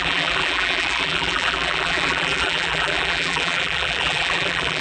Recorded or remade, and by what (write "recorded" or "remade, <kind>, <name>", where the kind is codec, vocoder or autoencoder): remade, vocoder, BigVGAN v2